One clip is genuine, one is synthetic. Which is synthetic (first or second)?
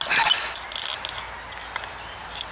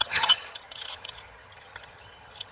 second